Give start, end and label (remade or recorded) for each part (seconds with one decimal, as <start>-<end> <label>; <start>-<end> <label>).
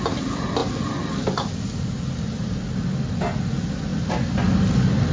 0.0-5.1 recorded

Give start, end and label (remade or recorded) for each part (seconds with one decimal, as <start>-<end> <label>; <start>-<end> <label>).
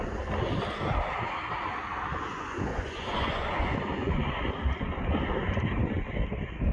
0.0-2.3 recorded; 2.3-4.2 remade; 4.2-6.7 recorded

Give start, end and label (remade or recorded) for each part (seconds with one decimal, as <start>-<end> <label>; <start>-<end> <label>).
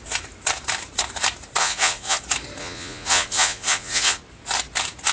0.0-1.6 recorded; 1.6-2.2 remade; 2.2-2.6 recorded; 2.6-4.2 remade; 4.2-5.1 recorded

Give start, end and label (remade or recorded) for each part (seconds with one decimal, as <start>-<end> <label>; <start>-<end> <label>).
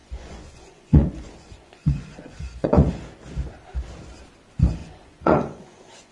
0.0-3.0 remade; 3.0-4.8 recorded; 4.8-6.1 remade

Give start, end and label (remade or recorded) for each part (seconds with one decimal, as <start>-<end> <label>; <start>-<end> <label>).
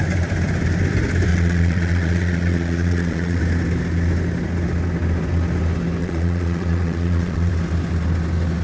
0.0-1.3 recorded; 1.3-3.4 remade; 3.4-6.0 recorded; 6.0-7.5 remade; 7.5-8.6 recorded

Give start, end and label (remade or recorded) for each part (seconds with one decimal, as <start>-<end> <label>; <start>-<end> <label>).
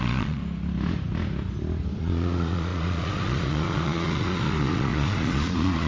0.0-0.4 remade; 0.4-2.0 recorded; 2.0-5.9 remade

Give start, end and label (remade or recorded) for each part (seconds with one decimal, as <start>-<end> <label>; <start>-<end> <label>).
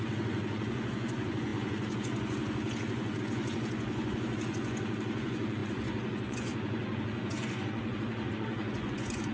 0.0-9.3 remade